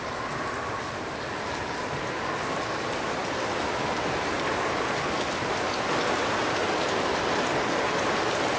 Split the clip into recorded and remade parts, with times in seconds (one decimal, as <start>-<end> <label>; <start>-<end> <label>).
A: 0.0-8.6 recorded